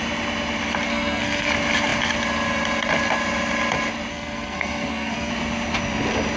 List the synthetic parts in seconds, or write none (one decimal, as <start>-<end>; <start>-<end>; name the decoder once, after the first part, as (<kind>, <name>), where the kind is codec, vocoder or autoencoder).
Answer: 0.9-1.5 (codec, SNAC); 4.1-5.3

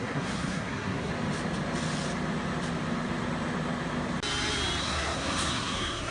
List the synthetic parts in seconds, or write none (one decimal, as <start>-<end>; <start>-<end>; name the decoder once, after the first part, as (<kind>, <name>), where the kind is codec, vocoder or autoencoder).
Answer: 0.0-1.1 (codec, SNAC); 4.8-6.1

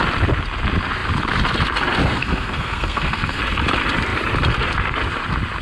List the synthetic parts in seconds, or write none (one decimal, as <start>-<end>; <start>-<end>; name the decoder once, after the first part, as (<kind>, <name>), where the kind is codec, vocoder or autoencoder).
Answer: 2.1-3.4 (codec, SNAC)

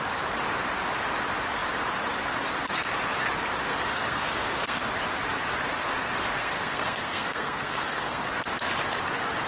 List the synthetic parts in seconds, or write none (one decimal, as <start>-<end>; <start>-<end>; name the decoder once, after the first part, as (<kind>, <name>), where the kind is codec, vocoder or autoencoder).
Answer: 3.7-4.8 (codec, SNAC); 6.4-8.3

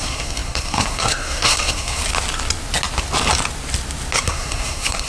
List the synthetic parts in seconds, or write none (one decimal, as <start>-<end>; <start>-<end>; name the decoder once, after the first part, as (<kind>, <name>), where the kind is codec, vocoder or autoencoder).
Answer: 0.0-2.0 (codec, SNAC); 4.2-5.1

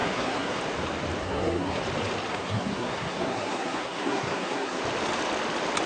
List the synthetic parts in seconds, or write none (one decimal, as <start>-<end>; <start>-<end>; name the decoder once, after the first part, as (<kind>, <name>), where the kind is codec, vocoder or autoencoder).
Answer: 0.0-0.6 (codec, SNAC); 1.2-1.8; 2.3-4.8

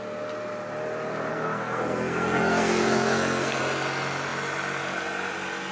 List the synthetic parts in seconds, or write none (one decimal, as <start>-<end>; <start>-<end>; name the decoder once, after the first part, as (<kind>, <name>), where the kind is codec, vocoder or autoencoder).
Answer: 1.3-3.6 (codec, SNAC)

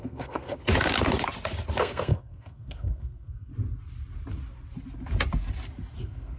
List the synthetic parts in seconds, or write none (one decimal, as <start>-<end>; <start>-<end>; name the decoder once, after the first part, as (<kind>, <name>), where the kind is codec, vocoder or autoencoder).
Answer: 0.0-0.6 (codec, SNAC); 1.8-3.5; 6.0-6.4